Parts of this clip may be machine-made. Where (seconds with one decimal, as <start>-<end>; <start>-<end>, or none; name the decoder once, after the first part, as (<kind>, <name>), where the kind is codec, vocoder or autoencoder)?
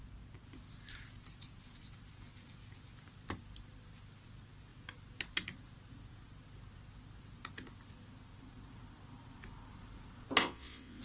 10.4-11.0 (vocoder, WaveNeXt)